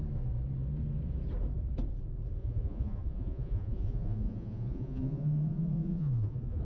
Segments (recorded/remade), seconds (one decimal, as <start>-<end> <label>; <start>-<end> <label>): 0.0-2.4 recorded; 2.4-6.6 remade